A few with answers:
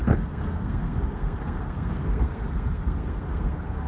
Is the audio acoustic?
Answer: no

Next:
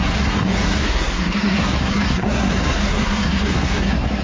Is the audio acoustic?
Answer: no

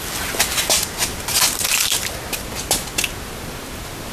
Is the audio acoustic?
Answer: yes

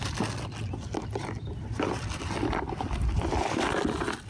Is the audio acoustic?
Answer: yes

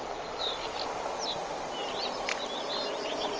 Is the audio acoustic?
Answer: yes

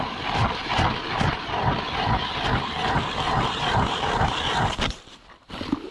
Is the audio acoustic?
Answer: yes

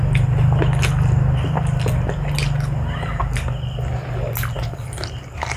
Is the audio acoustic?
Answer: yes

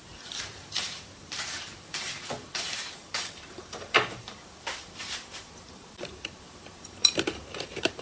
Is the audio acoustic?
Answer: no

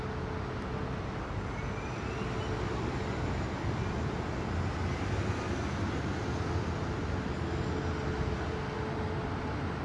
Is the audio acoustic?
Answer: yes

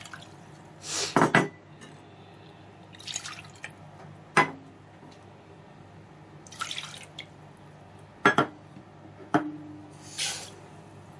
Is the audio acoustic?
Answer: yes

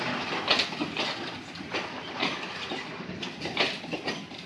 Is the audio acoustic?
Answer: yes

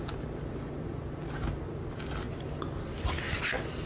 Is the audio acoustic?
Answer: yes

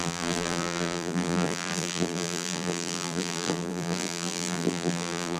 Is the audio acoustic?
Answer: no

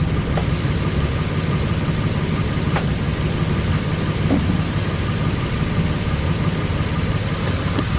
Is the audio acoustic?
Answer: yes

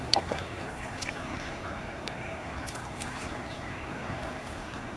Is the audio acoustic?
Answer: no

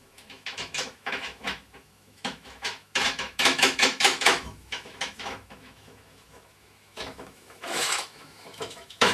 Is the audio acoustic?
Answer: no